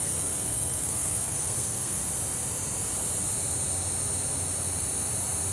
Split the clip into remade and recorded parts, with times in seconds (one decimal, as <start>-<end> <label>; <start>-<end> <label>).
0.0-2.0 remade; 2.0-5.5 recorded